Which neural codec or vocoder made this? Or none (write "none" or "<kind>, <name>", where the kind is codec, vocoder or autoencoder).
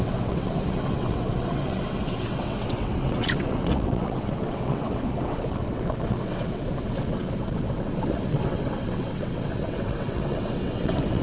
vocoder, WaveNeXt